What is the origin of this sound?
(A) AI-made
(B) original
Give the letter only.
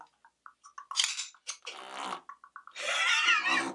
B